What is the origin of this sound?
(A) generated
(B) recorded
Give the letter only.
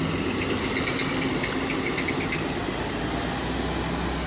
B